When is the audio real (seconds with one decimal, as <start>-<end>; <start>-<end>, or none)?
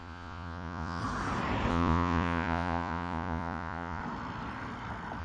1.0-1.7; 4.0-5.2